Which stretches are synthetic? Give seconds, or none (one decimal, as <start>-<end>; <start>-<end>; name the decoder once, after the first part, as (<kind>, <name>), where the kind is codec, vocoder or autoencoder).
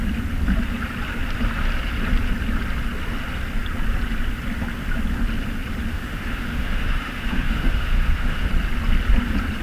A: 5.9-8.5 (autoencoder, DAC-VAE)